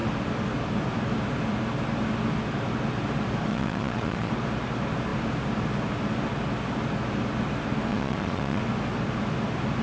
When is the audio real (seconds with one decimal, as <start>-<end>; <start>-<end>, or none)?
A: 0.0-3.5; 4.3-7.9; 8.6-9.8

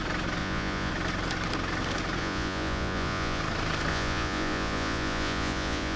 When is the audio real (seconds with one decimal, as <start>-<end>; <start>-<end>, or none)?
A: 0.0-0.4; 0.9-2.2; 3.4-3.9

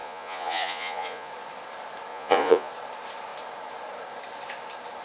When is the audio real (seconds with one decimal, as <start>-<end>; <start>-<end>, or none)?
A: 1.3-2.1; 2.7-5.0